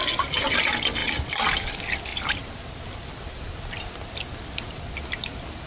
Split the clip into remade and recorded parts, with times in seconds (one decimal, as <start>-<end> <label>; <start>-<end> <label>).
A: 0.0-5.7 recorded